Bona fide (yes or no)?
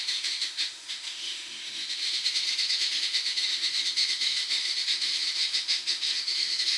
no